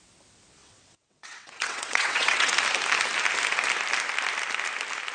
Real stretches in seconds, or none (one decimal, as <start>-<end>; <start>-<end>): 0.0-0.6; 2.5-5.1